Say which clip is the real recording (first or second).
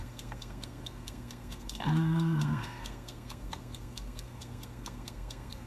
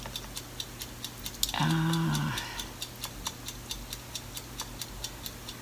second